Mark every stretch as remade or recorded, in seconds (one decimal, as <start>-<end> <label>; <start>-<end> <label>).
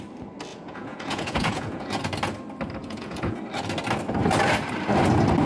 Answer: 0.0-0.5 recorded; 0.5-2.0 remade; 2.0-2.8 recorded; 2.8-3.4 remade; 3.4-5.5 recorded